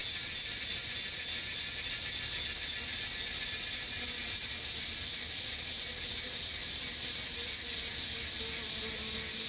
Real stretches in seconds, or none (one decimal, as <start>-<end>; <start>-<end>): 0.0-9.5